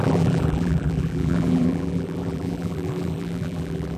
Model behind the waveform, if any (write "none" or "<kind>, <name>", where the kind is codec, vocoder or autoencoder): vocoder, BigVGAN v2